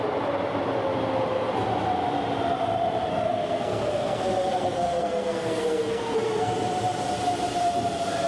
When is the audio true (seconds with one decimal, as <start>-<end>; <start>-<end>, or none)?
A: 0.0-3.1; 6.5-8.3